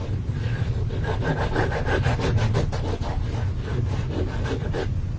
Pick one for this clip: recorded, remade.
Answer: recorded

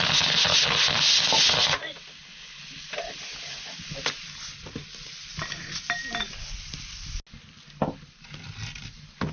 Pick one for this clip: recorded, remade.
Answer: recorded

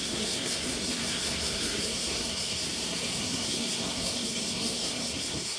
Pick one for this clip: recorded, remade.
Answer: remade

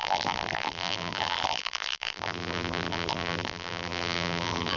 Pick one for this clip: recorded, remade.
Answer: remade